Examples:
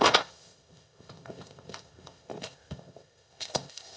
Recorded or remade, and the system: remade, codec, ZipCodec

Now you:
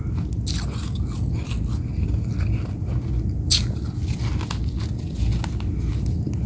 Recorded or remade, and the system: recorded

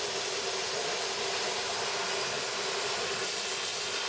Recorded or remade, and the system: recorded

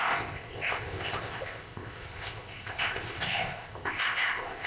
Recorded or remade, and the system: remade, codec, ZipCodec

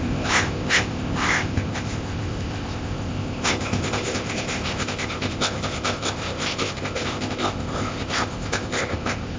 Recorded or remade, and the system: remade, codec, ZipCodec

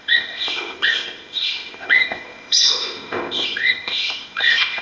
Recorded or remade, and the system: remade, codec, ZipCodec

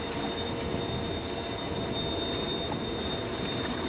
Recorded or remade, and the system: recorded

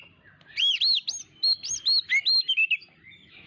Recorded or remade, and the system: recorded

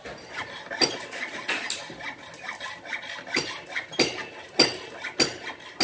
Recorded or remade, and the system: recorded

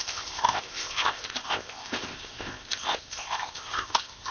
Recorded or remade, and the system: remade, codec, ZipCodec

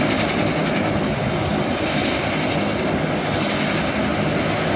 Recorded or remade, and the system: recorded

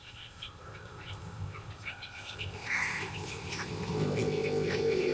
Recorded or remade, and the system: remade, codec, ZipCodec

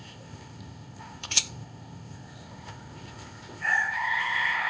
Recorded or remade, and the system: remade, codec, ZipCodec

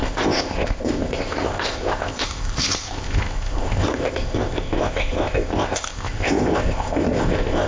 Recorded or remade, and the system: remade, codec, ZipCodec